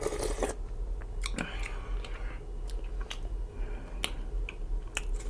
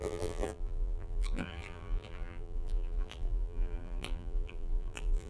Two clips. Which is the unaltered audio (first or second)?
first